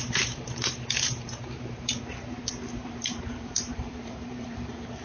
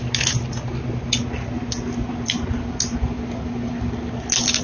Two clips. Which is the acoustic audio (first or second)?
second